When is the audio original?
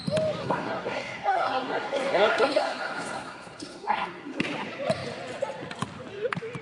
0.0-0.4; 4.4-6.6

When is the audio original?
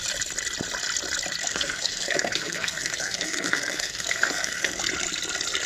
0.0-1.4; 4.8-5.7